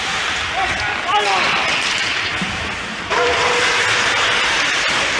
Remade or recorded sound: recorded